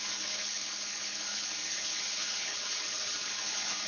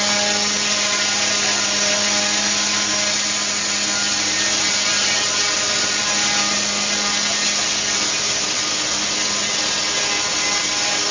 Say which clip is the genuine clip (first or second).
second